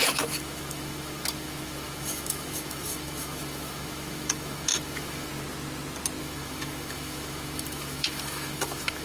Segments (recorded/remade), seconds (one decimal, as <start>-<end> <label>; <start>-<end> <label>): 0.0-5.3 remade; 5.3-6.2 recorded; 6.2-9.0 remade